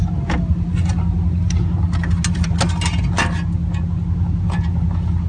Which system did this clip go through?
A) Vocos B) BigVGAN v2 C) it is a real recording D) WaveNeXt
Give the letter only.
C